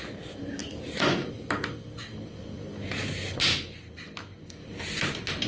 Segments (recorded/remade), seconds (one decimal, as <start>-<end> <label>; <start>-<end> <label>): 0.0-5.5 recorded

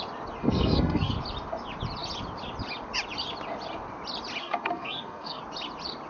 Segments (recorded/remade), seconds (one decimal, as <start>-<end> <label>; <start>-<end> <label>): 0.0-0.4 recorded; 0.4-1.1 remade; 1.1-4.4 recorded; 4.4-5.4 remade; 5.4-6.1 recorded

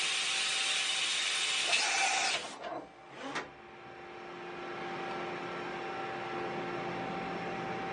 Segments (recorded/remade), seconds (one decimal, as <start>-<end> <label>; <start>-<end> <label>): 0.0-7.9 recorded

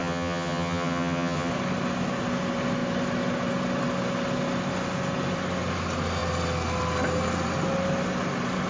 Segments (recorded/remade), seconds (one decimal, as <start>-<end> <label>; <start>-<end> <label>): 0.0-1.5 remade; 1.5-8.7 recorded

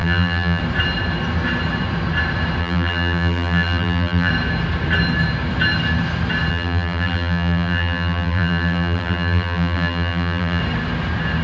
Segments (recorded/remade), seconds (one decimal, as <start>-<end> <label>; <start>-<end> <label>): 0.0-0.6 remade; 0.6-2.6 recorded; 2.6-4.3 remade; 4.3-6.5 recorded; 6.5-10.6 remade; 10.6-11.4 recorded

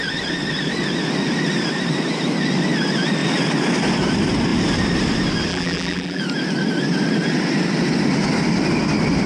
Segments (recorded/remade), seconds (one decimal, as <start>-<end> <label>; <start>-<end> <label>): 0.0-5.5 recorded; 5.5-6.2 remade; 6.2-9.3 recorded

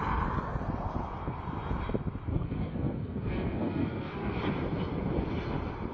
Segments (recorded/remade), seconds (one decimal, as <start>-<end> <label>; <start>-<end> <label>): 0.0-2.3 recorded; 2.3-4.4 remade; 4.4-5.9 recorded